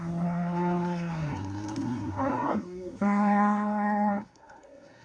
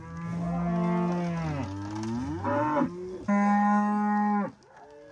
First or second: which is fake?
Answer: first